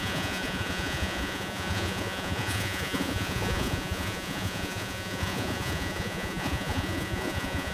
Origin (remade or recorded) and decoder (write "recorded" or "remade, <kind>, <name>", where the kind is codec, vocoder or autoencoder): remade, vocoder, Vocos